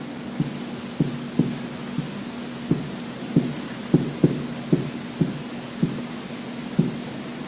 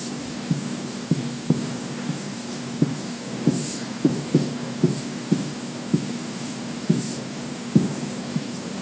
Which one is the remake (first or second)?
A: second